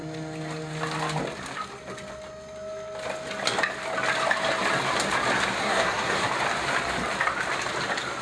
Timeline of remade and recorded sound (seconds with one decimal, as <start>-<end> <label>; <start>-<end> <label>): 0.0-5.6 recorded; 5.6-6.3 remade; 6.3-8.2 recorded